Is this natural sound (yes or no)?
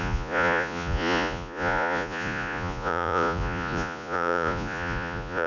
no